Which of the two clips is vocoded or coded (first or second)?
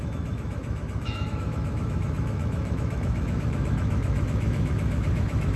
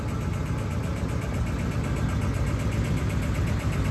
first